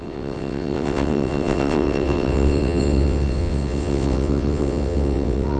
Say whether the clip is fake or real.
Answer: fake